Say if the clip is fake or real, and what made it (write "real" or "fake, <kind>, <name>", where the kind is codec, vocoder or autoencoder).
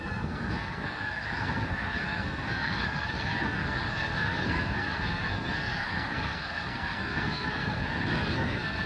fake, codec, SNAC